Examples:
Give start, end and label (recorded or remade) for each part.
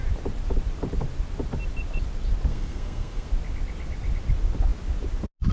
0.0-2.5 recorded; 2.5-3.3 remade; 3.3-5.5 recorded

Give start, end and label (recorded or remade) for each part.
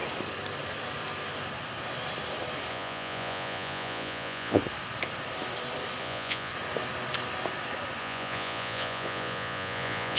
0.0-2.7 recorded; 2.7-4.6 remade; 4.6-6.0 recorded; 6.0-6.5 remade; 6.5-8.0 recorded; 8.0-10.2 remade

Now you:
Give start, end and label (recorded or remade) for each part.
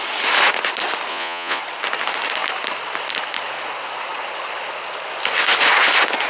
0.0-1.1 recorded; 1.1-1.6 remade; 1.6-6.3 recorded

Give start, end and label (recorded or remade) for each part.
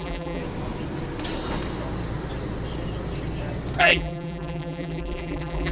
0.0-0.4 remade; 0.4-3.8 recorded; 3.8-5.7 remade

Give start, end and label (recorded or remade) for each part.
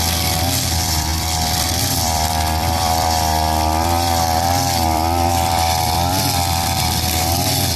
0.0-7.8 remade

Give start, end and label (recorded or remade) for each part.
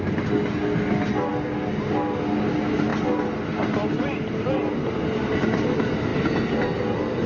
0.0-7.3 recorded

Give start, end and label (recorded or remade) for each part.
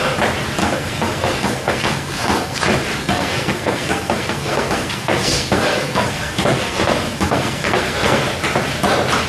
0.0-0.6 recorded; 0.6-2.6 remade; 2.6-3.0 recorded; 3.0-8.2 remade; 8.2-9.3 recorded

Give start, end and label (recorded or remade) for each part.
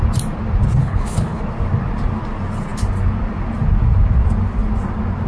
0.0-0.8 recorded; 0.8-1.4 remade; 1.4-5.3 recorded